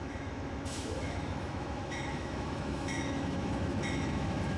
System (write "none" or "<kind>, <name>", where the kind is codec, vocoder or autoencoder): autoencoder, DAC-VAE